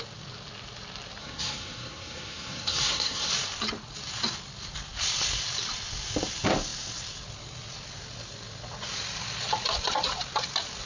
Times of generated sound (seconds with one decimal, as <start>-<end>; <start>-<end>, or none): 1.2-3.3